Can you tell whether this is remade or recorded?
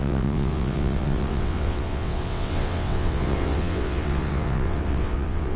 remade